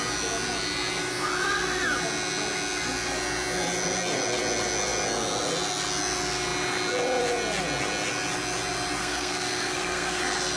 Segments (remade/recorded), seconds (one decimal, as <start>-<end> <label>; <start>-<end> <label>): 0.0-9.0 recorded; 9.0-10.2 remade; 10.2-10.6 recorded